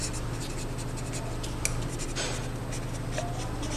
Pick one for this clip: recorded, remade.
recorded